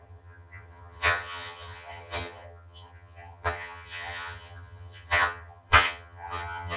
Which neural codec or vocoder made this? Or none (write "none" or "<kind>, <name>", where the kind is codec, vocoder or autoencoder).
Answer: vocoder, HiFi-GAN